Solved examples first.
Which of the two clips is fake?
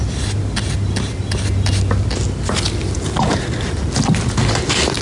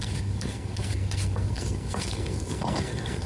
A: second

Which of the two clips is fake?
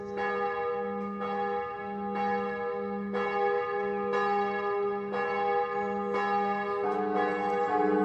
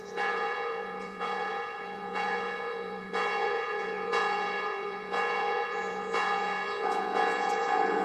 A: second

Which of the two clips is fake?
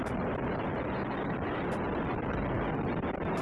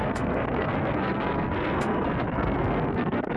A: second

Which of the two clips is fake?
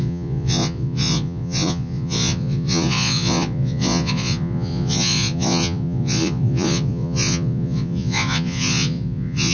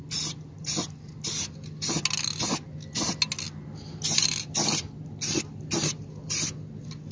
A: first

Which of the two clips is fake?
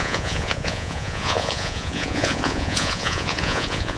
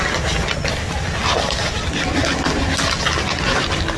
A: first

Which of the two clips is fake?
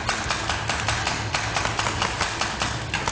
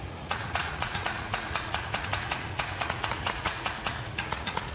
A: second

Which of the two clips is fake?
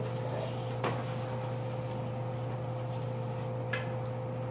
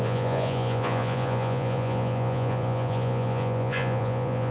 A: second